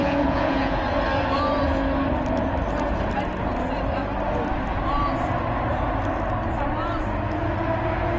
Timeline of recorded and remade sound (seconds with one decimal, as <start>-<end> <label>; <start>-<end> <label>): 0.0-0.8 remade; 0.8-8.2 recorded